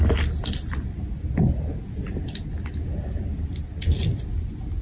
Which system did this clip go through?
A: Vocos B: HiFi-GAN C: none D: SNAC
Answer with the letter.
C